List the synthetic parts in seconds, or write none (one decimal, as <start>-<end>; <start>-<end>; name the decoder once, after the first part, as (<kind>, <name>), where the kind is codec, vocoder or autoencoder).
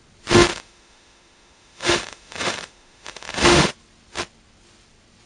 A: 0.5-3.7 (autoencoder, DAC-VAE)